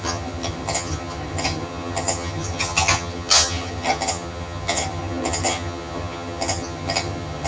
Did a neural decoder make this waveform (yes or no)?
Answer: yes